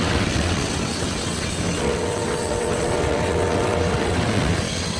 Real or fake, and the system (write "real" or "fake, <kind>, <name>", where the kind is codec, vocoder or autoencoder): fake, vocoder, WaveNeXt